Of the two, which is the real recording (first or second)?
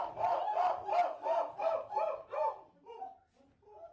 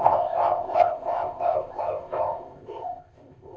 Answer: first